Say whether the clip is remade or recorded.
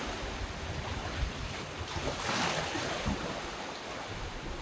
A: recorded